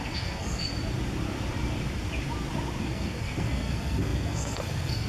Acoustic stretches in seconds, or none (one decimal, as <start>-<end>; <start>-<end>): 0.7-2.8